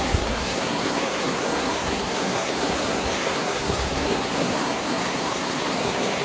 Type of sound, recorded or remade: remade